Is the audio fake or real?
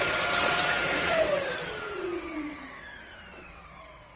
fake